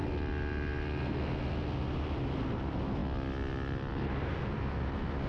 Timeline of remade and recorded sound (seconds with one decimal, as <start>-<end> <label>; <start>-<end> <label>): 0.0-5.3 recorded